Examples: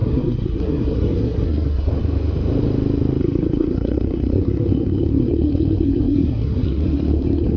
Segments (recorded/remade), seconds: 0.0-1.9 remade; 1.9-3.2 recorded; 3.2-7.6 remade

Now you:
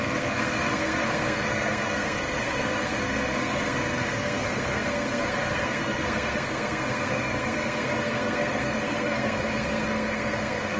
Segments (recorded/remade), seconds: 0.0-10.8 remade

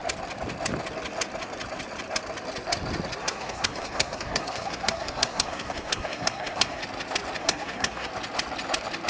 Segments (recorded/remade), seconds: 0.0-3.2 recorded; 3.2-6.8 remade; 6.8-7.4 recorded; 7.4-8.1 remade; 8.1-9.1 recorded

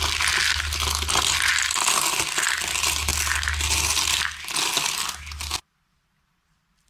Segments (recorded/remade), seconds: 0.0-6.9 recorded

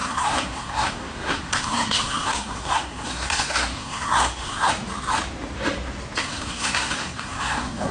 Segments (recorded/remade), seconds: 0.0-4.7 remade; 4.7-6.2 recorded; 6.2-7.9 remade

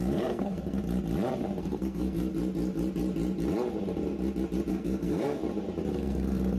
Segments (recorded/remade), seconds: 0.0-0.8 remade; 0.8-1.6 recorded; 1.6-2.3 remade; 2.3-4.7 recorded; 4.7-5.4 remade; 5.4-5.9 recorded; 5.9-6.6 remade